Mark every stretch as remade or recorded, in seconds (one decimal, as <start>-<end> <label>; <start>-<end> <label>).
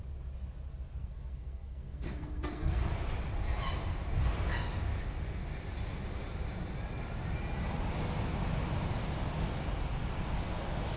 0.0-1.0 recorded; 1.0-2.9 remade; 2.9-11.0 recorded